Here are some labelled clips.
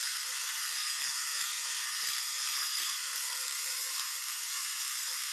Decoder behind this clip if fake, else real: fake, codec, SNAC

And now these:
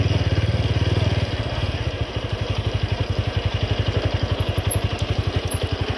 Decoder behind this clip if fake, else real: real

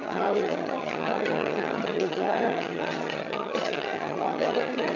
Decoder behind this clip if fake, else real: fake, vocoder, HiFi-GAN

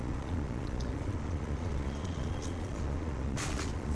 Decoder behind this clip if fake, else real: fake, vocoder, Vocos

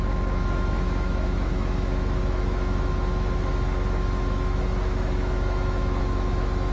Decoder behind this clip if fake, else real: fake, autoencoder, DAC-VAE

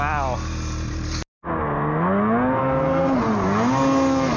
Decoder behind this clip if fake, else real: real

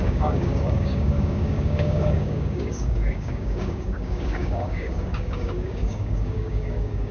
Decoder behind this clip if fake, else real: fake, codec, DAC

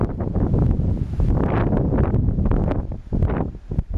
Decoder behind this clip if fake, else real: real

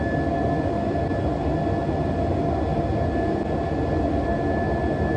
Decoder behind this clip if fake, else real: real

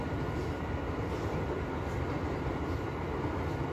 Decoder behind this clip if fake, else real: real